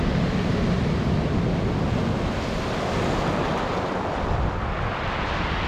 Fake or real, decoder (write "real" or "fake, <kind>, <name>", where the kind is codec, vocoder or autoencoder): real